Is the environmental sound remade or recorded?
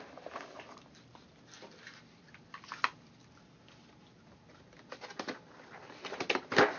recorded